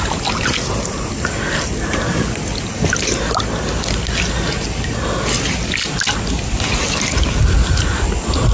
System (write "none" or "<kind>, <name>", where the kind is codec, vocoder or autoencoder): none